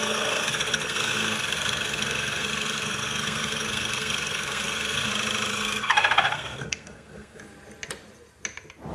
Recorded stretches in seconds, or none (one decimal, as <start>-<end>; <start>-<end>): 5.1-5.5; 7.4-8.9